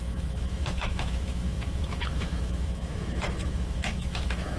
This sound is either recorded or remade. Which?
remade